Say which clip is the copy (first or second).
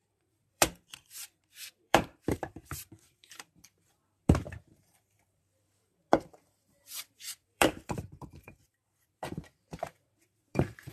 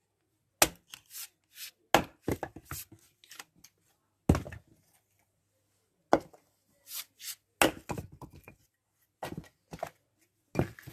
first